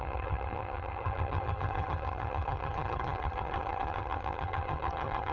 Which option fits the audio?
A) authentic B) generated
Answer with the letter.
B